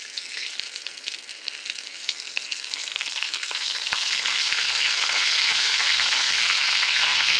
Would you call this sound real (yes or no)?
no